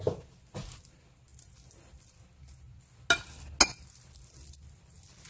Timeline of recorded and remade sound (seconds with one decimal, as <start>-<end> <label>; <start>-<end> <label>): 0.0-5.3 recorded